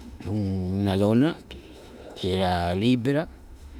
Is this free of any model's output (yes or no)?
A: no